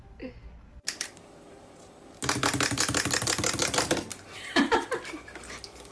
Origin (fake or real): real